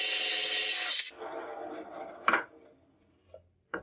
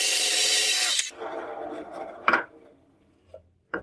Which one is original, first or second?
first